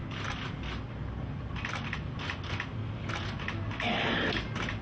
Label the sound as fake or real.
real